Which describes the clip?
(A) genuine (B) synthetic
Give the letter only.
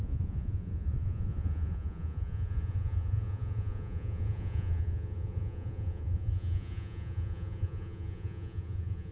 B